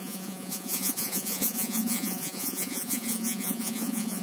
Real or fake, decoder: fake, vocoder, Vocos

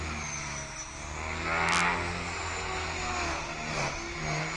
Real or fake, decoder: real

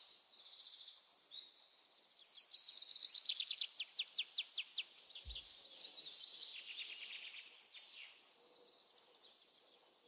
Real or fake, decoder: real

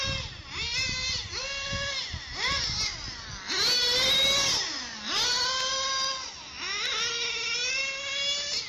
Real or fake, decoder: real